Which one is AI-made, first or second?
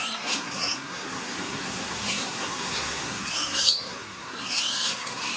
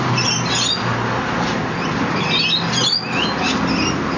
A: first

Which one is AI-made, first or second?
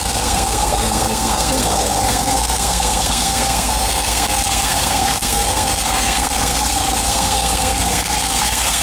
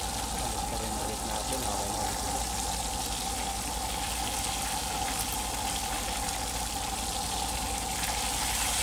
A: first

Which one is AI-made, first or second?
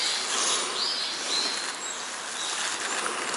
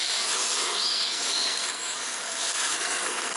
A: second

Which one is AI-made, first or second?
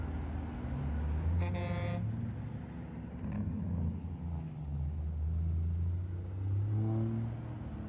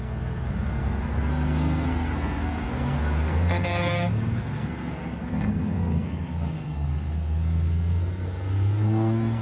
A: second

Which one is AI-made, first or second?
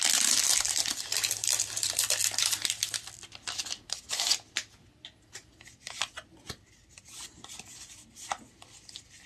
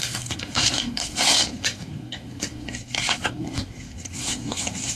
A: second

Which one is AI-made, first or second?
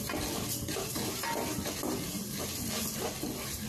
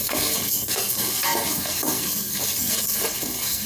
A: second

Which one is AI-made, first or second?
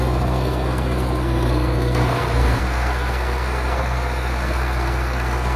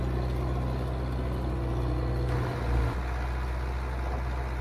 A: first